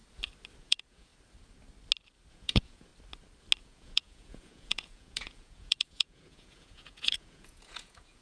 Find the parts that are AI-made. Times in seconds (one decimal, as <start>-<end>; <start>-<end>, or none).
0.6-1.1; 2.3-2.9; 3.6-8.2